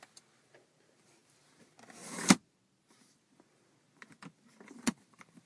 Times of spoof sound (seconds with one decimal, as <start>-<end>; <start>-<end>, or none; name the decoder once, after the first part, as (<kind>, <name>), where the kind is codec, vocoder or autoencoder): none